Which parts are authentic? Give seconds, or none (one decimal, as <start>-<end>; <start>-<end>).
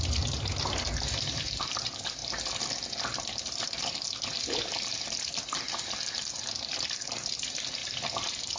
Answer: 2.2-4.8